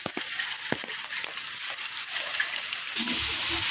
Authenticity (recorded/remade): recorded